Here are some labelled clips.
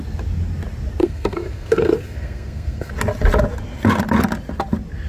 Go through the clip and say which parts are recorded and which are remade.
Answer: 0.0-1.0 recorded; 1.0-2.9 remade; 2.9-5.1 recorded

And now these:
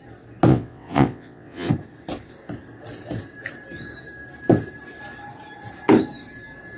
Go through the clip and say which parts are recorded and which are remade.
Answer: 0.0-0.5 recorded; 0.5-1.7 remade; 1.7-6.8 recorded

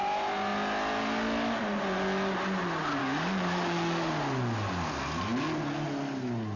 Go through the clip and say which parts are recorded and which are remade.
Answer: 0.0-3.0 recorded; 3.0-4.1 remade; 4.1-6.6 recorded

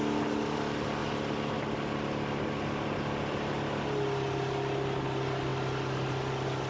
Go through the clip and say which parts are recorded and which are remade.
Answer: 0.0-6.7 recorded

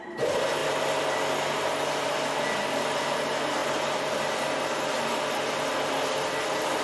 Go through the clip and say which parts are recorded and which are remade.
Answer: 0.0-6.8 recorded

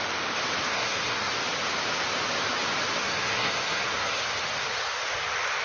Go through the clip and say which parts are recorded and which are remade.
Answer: 0.0-0.7 recorded; 0.7-1.3 remade; 1.3-3.0 recorded; 3.0-4.2 remade; 4.2-5.6 recorded